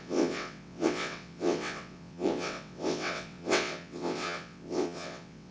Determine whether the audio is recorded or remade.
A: remade